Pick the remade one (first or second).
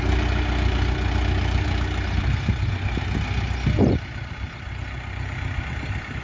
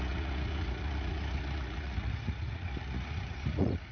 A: second